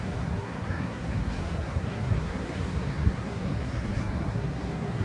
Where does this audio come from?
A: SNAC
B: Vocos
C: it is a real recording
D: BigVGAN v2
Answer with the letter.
A